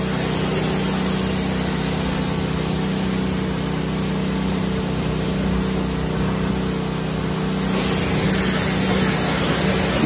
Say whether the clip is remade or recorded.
recorded